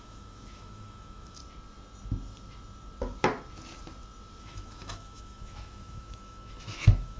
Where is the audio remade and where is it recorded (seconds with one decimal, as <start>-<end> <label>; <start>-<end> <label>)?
0.0-1.4 remade; 1.4-4.4 recorded; 4.4-7.2 remade